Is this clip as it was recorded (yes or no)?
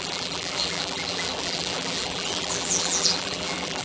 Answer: no